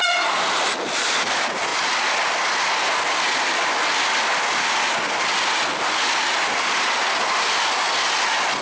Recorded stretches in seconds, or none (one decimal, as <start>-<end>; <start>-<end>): 0.0-8.6